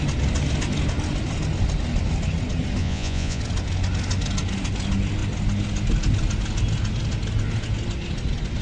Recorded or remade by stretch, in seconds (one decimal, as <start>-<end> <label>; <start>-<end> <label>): 0.0-2.8 recorded; 2.8-3.4 remade; 3.4-8.6 recorded

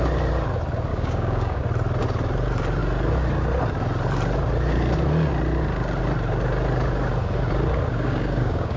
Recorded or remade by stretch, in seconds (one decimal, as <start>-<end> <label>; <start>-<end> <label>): 0.0-0.9 recorded; 0.9-1.6 remade; 1.6-7.9 recorded; 7.9-8.8 remade